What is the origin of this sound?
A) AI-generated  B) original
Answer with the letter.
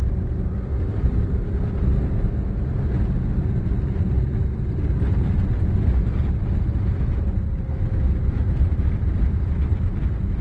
B